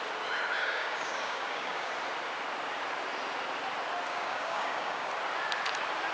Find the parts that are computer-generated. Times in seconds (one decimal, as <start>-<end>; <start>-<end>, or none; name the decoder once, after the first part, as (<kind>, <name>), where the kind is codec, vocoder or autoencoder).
0.6-1.9 (codec, DAC); 4.1-5.1